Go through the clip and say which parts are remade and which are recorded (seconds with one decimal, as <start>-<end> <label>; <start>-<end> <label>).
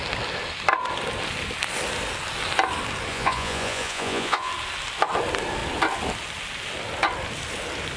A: 0.0-3.1 recorded; 3.1-4.5 remade; 4.5-8.0 recorded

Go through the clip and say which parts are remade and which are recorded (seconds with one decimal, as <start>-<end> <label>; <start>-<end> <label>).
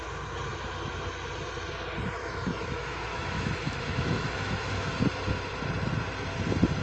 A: 0.0-2.2 recorded; 2.2-4.9 remade; 4.9-6.8 recorded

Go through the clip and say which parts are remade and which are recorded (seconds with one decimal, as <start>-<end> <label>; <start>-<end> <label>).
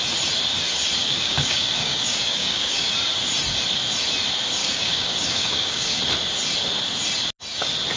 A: 0.0-1.0 recorded; 1.0-2.9 remade; 2.9-4.6 recorded; 4.6-6.0 remade; 6.0-8.0 recorded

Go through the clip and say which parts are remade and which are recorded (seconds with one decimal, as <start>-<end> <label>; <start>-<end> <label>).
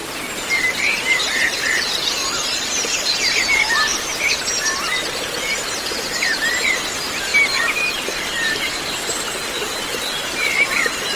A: 0.0-1.8 remade; 1.8-3.9 recorded; 3.9-4.4 remade; 4.4-7.3 recorded; 7.3-8.8 remade; 8.8-11.2 recorded